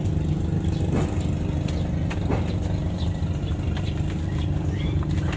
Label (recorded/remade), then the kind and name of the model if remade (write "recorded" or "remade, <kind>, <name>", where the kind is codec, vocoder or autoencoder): recorded